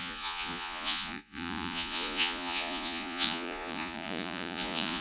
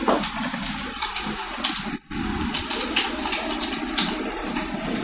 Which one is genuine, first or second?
second